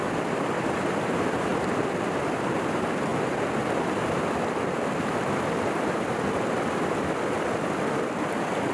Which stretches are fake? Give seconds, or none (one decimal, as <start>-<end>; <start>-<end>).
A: 0.0-1.5; 2.2-8.7